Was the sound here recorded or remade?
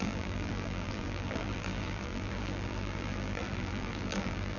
remade